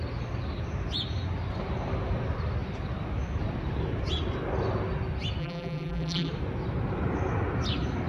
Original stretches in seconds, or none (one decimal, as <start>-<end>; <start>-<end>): 0.0-5.4; 6.3-8.1